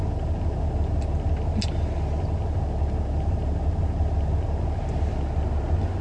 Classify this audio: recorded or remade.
recorded